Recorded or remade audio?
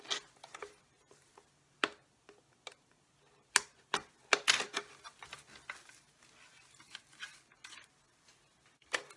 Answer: recorded